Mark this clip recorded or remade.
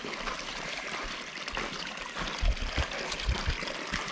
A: recorded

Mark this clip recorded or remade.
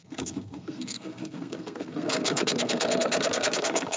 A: remade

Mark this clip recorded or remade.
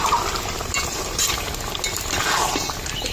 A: recorded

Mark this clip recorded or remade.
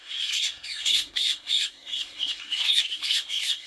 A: remade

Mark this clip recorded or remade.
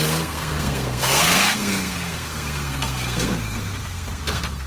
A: remade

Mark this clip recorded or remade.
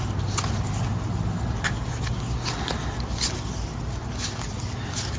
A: recorded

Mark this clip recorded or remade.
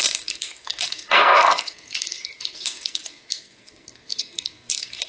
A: remade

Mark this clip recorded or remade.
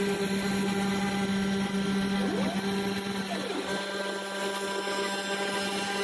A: recorded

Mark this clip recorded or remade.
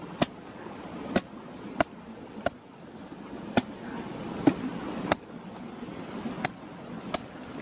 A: recorded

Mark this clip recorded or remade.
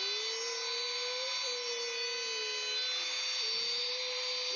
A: recorded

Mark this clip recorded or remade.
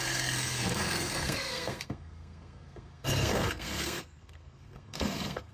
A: remade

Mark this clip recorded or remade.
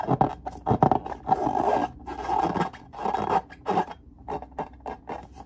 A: recorded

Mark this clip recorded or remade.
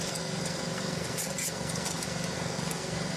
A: remade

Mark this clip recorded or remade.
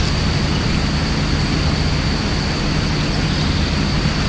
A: recorded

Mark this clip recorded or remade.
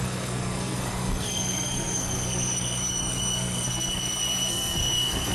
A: remade